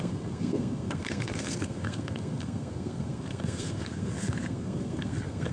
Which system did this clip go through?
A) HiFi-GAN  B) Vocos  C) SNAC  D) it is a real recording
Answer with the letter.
C